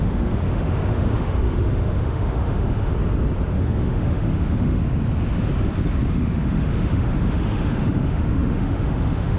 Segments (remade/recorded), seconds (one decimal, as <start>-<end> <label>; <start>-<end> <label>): 0.0-2.9 remade; 2.9-3.5 recorded; 3.5-4.8 remade; 4.8-6.1 recorded; 6.1-9.4 remade